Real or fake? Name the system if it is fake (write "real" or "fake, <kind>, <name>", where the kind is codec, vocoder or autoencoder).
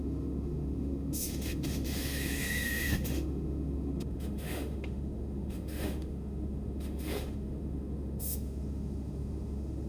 fake, autoencoder, DAC-VAE